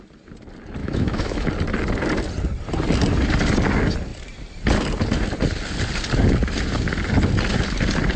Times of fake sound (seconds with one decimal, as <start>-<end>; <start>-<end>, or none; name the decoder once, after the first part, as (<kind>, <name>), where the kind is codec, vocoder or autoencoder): 0.8-1.5 (autoencoder, DAC-VAE)